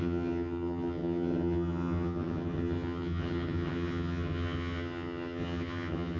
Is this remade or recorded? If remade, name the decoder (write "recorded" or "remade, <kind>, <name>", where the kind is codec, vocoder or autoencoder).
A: remade, vocoder, HiFi-GAN